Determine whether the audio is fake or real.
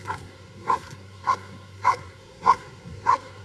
fake